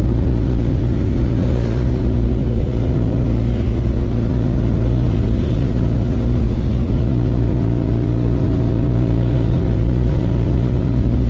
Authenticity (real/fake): fake